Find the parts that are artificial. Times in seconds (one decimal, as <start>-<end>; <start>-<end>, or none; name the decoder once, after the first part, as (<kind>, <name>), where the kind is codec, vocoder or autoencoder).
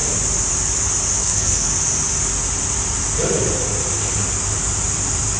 1.2-1.7 (codec, SNAC)